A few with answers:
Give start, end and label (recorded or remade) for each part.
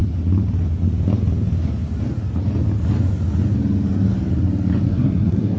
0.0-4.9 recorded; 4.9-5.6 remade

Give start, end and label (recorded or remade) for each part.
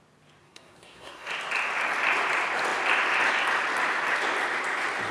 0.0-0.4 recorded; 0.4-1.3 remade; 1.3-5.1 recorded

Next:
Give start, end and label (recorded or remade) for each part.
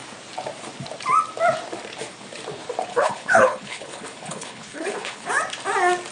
0.0-2.9 recorded; 2.9-5.3 remade; 5.3-6.1 recorded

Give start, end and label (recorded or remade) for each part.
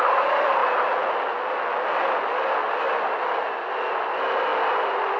0.0-5.2 recorded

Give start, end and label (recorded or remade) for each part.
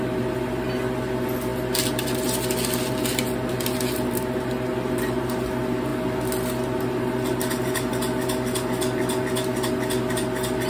0.0-10.7 recorded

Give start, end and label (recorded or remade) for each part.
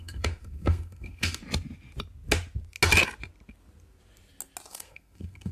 0.0-1.4 remade; 1.4-4.7 recorded; 4.7-5.5 remade